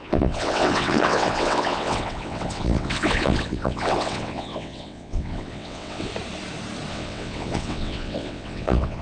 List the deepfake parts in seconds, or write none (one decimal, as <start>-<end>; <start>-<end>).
0.0-6.1; 6.9-9.0